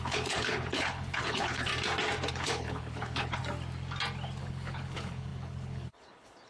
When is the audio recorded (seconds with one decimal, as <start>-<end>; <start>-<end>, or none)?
1.7-2.3; 3.4-4.4